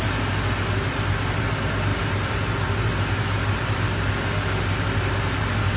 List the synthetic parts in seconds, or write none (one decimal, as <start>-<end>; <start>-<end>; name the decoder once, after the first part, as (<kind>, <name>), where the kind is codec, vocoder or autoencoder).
none